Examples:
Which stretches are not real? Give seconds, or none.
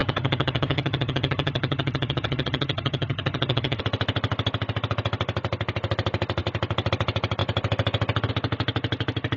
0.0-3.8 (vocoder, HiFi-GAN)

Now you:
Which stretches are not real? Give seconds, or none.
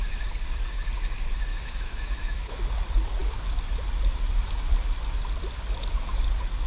1.5-2.6 (autoencoder, DAC-VAE)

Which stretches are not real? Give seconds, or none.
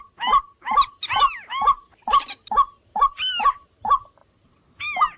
none